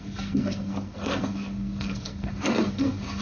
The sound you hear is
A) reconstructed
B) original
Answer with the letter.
A